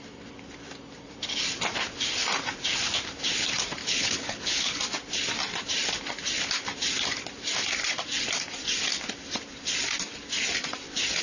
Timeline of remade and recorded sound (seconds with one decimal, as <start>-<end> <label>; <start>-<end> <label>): 0.0-3.8 recorded; 3.8-4.8 remade; 4.8-11.2 recorded